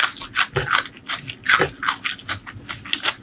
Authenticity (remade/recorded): recorded